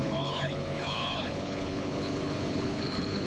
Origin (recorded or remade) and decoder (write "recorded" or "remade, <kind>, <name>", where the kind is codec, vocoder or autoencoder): remade, codec, HILCodec